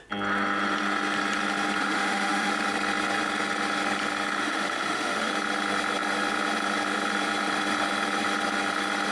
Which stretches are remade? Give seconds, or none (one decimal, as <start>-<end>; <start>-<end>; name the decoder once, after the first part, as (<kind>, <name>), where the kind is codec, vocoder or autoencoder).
1.8-2.5 (autoencoder, DAC-VAE); 4.4-5.3